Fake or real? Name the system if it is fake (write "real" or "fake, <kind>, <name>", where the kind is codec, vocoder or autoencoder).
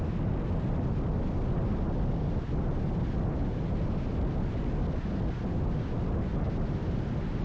real